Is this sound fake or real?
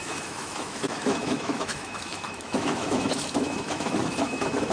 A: fake